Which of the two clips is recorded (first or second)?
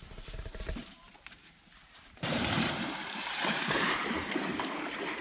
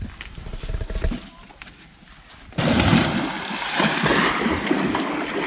second